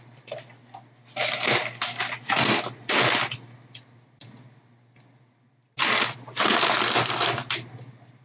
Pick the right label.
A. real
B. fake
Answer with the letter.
A